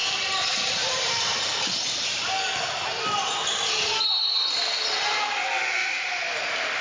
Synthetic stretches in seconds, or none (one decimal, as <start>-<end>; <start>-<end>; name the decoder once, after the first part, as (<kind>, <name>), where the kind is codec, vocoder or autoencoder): 0.0-1.7 (vocoder, BigVGAN v2)